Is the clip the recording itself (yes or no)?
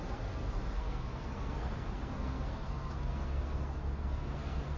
no